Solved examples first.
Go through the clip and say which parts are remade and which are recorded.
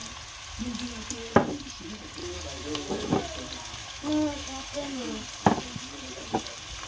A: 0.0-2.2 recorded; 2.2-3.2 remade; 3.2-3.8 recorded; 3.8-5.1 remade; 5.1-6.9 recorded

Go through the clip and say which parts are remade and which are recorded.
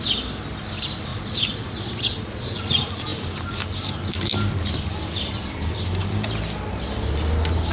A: 0.0-1.1 recorded; 1.1-2.6 remade; 2.6-7.7 recorded